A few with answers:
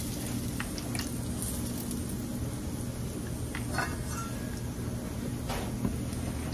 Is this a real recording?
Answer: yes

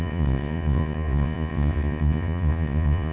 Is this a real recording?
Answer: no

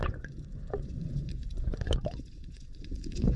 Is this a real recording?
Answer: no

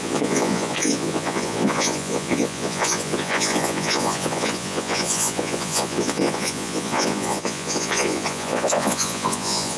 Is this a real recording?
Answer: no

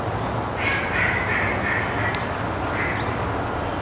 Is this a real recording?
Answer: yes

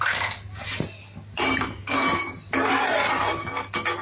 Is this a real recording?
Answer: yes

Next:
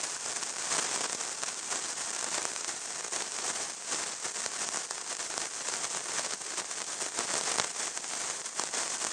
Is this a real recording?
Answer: yes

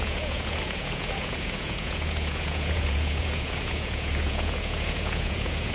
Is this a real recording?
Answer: no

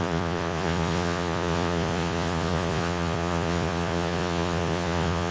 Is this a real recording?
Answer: no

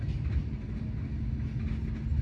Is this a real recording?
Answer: yes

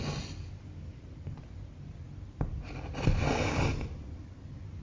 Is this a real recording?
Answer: yes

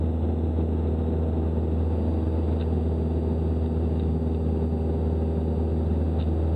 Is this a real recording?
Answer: yes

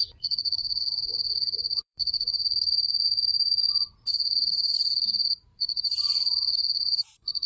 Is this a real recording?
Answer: no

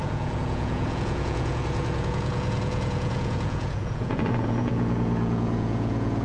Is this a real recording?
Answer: no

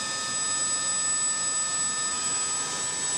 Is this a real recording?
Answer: yes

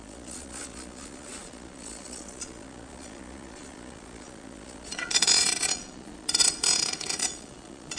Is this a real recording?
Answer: no